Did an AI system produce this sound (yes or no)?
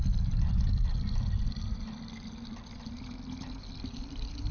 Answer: no